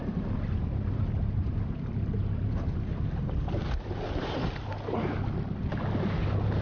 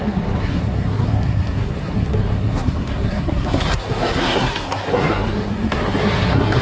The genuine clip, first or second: first